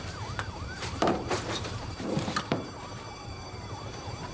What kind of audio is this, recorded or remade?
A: remade